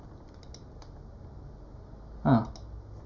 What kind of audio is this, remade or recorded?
recorded